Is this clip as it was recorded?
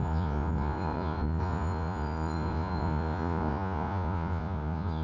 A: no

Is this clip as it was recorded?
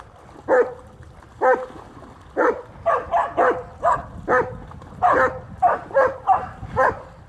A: yes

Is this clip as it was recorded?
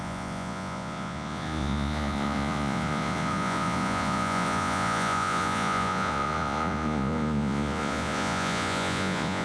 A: no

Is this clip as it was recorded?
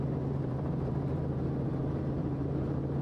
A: no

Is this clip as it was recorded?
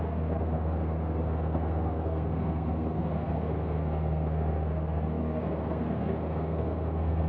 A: no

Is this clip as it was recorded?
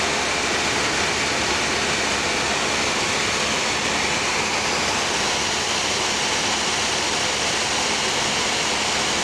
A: yes